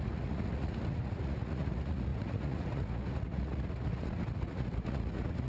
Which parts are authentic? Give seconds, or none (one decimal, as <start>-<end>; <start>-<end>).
none

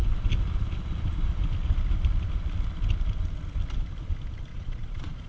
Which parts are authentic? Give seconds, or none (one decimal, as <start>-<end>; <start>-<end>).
0.0-4.5

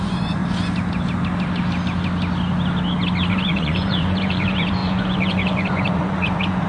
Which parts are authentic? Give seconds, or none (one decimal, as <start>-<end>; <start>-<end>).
0.4-3.3

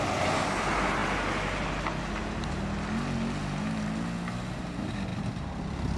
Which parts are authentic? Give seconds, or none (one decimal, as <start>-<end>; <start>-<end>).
0.0-6.0

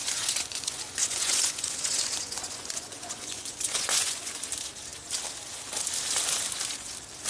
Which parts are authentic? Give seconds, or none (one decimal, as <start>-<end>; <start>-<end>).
4.4-7.3

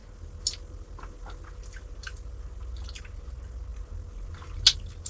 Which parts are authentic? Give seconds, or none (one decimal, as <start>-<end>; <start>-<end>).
0.0-5.1

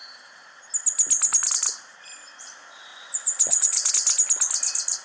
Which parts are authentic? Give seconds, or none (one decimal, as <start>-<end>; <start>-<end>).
0.0-2.9; 3.9-5.0